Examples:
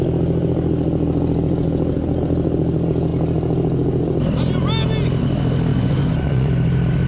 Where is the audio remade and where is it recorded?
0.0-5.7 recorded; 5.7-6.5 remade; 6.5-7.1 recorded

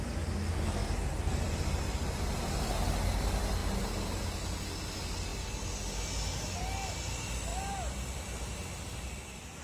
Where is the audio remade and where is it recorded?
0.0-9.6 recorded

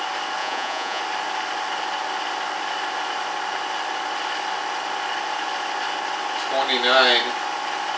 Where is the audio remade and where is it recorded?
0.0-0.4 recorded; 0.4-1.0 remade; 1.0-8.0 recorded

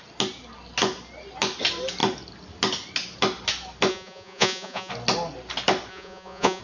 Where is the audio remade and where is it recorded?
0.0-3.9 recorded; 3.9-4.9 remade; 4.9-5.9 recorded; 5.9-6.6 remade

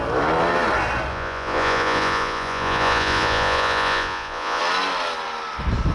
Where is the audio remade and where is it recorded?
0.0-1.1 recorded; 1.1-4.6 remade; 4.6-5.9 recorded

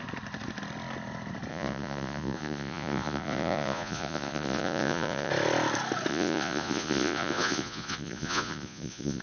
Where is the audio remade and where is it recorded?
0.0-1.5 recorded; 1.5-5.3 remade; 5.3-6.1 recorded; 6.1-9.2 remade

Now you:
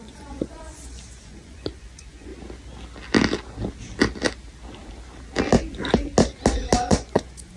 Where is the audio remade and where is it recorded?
0.0-2.3 remade; 2.3-6.9 recorded; 6.9-7.6 remade